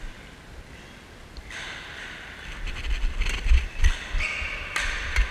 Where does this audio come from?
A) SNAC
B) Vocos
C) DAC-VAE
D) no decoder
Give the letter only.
D